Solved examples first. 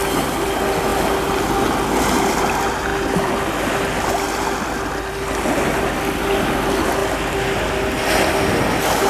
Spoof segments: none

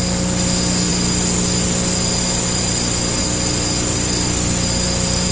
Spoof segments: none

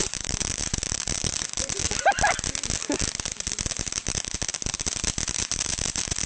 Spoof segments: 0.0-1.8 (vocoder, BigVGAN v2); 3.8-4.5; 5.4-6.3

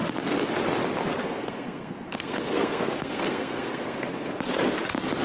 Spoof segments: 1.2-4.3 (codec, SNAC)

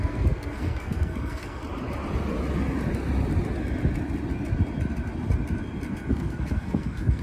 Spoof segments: 0.0-1.6 (codec, SNAC); 5.9-7.2

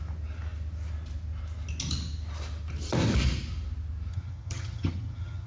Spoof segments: 4.1-5.5 (vocoder, HiFi-GAN)

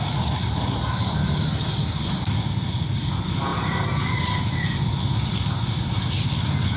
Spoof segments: none